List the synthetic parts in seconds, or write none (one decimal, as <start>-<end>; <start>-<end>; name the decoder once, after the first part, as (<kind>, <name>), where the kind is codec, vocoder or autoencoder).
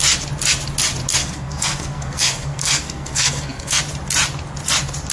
1.2-3.8 (codec, SNAC)